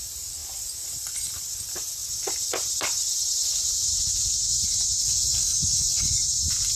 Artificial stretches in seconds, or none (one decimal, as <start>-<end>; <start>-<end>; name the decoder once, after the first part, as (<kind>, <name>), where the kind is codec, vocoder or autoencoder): 5.0-6.2 (codec, DAC)